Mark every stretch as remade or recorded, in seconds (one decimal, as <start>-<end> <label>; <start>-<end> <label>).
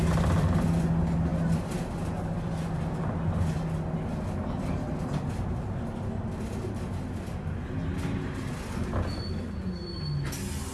0.0-10.7 recorded